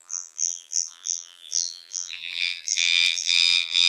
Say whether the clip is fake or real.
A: fake